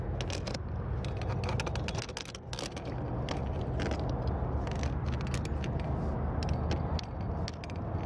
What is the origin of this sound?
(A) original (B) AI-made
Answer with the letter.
A